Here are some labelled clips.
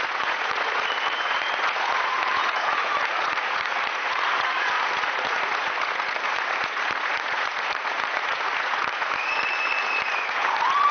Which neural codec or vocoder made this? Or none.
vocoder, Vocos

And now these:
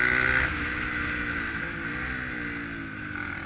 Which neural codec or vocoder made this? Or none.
none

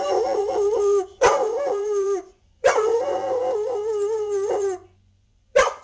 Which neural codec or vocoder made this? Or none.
vocoder, Vocos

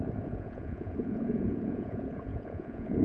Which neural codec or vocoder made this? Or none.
vocoder, Vocos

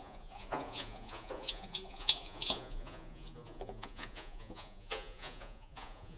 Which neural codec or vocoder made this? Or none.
vocoder, Vocos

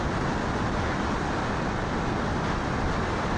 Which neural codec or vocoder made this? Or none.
none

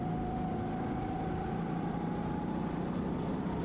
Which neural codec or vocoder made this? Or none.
none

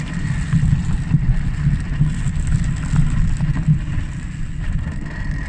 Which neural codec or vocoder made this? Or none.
none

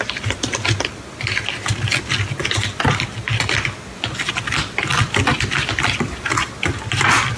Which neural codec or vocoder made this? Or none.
none